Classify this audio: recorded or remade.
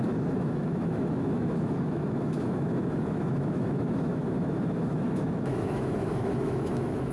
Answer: remade